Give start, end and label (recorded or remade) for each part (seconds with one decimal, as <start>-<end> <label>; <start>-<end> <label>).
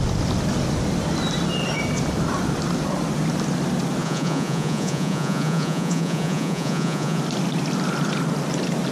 0.0-4.0 recorded; 4.0-7.2 remade; 7.2-8.9 recorded